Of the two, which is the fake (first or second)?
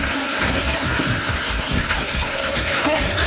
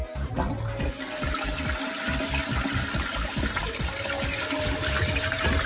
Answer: first